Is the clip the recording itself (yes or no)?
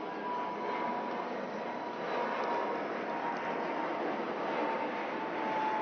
yes